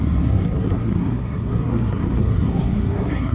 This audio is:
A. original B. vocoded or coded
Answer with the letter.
B